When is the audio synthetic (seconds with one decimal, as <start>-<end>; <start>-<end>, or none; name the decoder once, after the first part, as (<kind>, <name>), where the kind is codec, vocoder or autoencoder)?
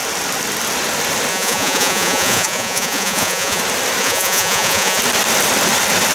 1.3-3.6 (vocoder, Vocos); 4.0-5.0